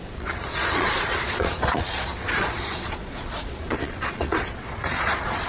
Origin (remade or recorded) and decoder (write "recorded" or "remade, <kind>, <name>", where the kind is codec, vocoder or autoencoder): remade, vocoder, Vocos